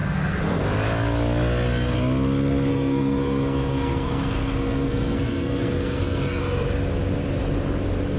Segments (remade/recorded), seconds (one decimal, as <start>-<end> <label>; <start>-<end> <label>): 0.0-0.6 remade; 0.6-2.7 recorded; 2.7-6.4 remade; 6.4-8.2 recorded